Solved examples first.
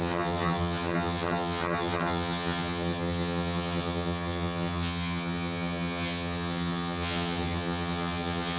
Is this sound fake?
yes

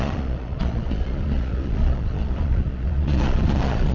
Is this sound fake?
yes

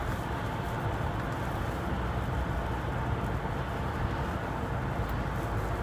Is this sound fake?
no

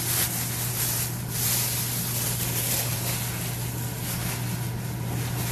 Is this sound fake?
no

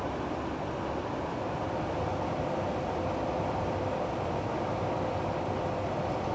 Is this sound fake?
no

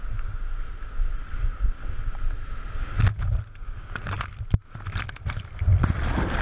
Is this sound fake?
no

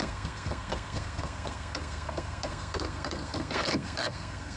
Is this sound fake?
yes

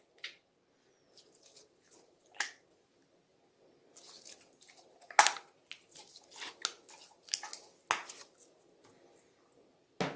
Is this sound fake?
no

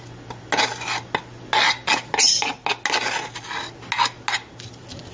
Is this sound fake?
no